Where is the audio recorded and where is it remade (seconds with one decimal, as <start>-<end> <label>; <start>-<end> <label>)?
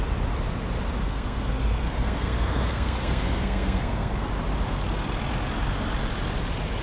0.0-1.0 recorded; 1.0-4.3 remade; 4.3-6.8 recorded